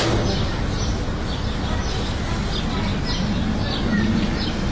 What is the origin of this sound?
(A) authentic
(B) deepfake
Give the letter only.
A